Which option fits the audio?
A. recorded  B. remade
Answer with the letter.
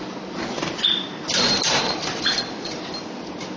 A